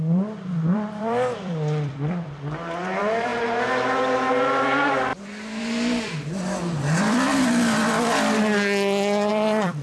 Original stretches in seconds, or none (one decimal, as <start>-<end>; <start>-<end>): 3.3-4.3; 5.1-7.0; 7.8-9.3